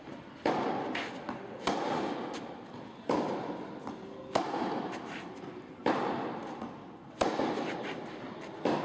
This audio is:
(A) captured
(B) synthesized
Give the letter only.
A